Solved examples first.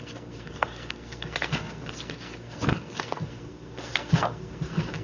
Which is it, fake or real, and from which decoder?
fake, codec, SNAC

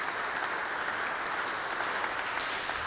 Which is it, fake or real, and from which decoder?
real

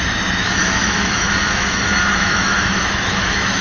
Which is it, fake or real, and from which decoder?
fake, autoencoder, DAC-VAE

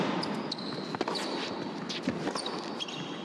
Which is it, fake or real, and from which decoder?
real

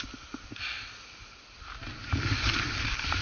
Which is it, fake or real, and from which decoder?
real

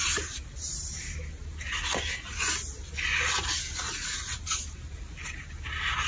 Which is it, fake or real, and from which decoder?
real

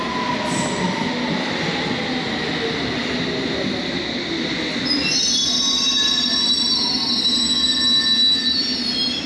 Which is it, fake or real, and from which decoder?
real